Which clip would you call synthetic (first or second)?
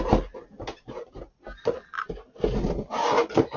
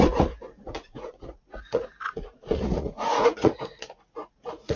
second